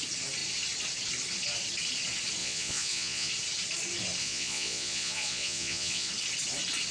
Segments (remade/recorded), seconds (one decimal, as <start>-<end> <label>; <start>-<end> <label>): 0.0-2.4 recorded; 2.4-3.3 remade; 3.3-4.2 recorded; 4.2-6.1 remade; 6.1-6.9 recorded